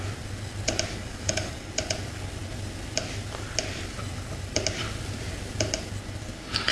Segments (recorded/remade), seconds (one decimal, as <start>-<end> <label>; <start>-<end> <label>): 0.0-1.0 recorded; 1.0-1.7 remade; 1.7-6.7 recorded

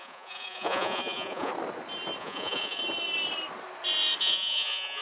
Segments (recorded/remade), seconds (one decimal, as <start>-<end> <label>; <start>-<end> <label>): 0.0-1.5 remade; 1.5-2.2 recorded; 2.2-2.8 remade; 2.8-4.2 recorded; 4.2-5.0 remade

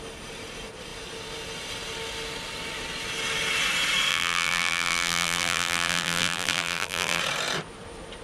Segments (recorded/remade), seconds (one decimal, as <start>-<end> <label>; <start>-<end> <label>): 0.0-4.1 recorded; 4.1-7.2 remade; 7.2-8.2 recorded

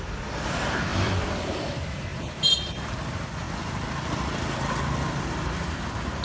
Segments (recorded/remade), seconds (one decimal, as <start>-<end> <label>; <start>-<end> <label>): 0.0-0.9 recorded; 0.9-1.5 remade; 1.5-2.1 recorded; 2.1-5.8 remade; 5.8-6.2 recorded

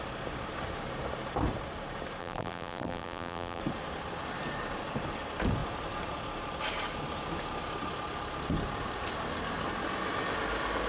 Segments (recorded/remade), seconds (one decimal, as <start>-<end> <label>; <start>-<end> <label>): 0.0-2.2 recorded; 2.2-3.6 remade; 3.6-10.9 recorded

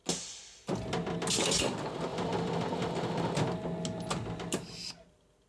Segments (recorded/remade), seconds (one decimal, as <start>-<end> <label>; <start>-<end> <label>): 0.0-5.5 recorded